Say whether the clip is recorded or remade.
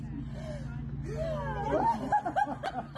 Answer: recorded